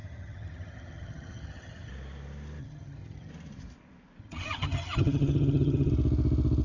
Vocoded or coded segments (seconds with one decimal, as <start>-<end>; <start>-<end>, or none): 0.0-1.9; 2.6-3.3; 4.2-5.9